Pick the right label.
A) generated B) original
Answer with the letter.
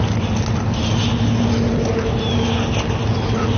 B